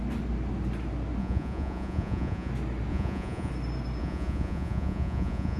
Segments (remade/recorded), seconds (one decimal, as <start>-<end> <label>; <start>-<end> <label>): 0.0-1.2 recorded; 1.2-2.5 remade; 2.5-2.9 recorded; 2.9-3.5 remade; 3.5-4.0 recorded; 4.0-5.6 remade